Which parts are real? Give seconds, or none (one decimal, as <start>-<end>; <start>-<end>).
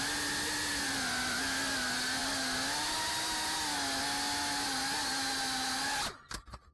0.0-6.7